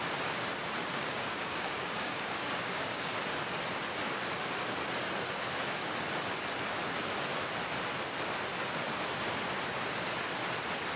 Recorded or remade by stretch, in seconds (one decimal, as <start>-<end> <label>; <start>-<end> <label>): 0.0-0.8 recorded; 0.8-3.1 remade; 3.1-11.0 recorded